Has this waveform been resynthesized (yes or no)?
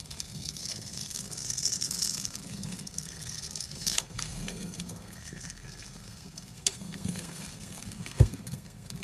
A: yes